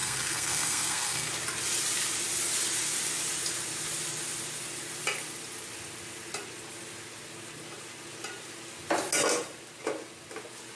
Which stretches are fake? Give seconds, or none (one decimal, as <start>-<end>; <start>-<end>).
0.0-1.3

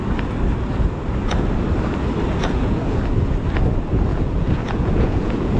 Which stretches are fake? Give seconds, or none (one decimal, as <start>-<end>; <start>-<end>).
2.4-3.0; 4.1-5.6

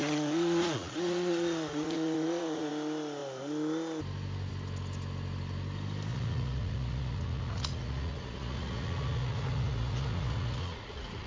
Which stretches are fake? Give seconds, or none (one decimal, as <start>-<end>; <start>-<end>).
0.0-2.7; 6.1-11.3